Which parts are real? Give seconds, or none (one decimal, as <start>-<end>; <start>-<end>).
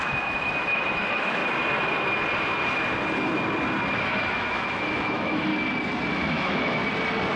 1.4-4.0; 5.5-6.1; 6.8-7.4